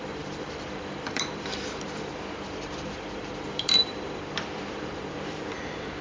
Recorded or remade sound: remade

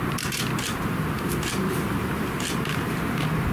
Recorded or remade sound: remade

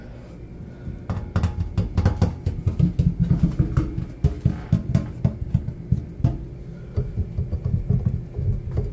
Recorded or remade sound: recorded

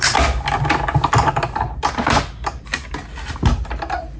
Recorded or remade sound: recorded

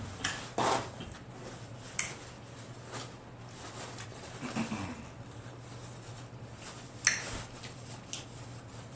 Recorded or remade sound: recorded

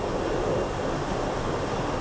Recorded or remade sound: recorded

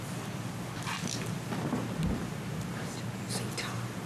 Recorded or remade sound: recorded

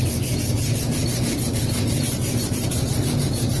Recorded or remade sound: remade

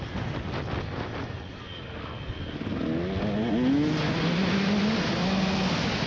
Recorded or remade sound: recorded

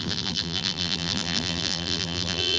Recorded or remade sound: remade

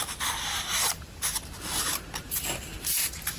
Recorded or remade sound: recorded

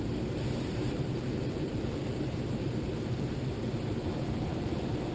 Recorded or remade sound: remade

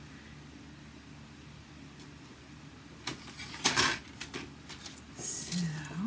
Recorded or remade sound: recorded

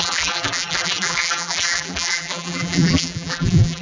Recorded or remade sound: remade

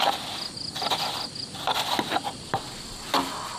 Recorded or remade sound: remade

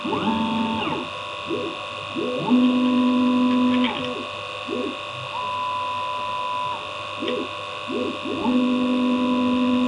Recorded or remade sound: recorded